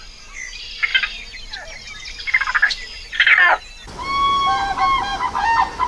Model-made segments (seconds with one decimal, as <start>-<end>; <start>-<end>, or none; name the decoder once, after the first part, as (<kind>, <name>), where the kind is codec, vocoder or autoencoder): none

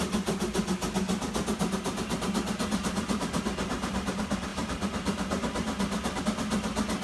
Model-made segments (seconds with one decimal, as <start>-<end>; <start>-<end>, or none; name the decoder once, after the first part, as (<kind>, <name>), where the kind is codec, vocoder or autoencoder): none

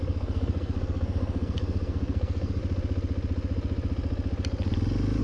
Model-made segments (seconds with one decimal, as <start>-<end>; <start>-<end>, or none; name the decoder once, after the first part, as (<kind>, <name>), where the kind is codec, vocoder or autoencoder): 0.0-2.6 (codec, SNAC)

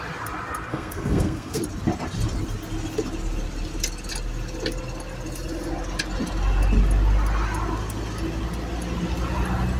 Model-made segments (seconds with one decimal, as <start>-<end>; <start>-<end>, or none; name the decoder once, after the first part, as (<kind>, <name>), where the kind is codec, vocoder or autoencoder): 0.7-1.6 (codec, SNAC)